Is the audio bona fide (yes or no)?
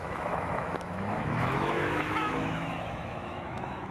no